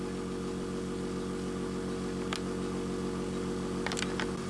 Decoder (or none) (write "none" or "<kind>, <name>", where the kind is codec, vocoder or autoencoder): none